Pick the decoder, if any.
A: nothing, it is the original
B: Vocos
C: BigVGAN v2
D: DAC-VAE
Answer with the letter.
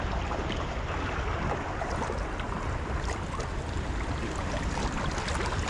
A